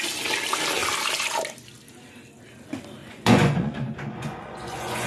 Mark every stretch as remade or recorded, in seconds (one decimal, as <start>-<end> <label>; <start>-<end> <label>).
0.0-3.0 recorded; 3.0-5.1 remade

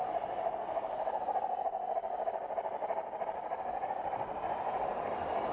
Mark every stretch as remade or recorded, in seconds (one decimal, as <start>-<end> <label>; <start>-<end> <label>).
0.0-5.5 recorded

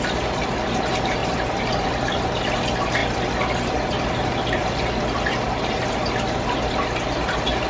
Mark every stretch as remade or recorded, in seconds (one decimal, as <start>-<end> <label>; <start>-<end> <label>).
0.0-7.7 recorded

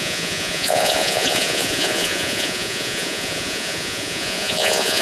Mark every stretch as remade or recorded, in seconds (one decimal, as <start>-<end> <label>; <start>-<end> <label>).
0.0-5.0 remade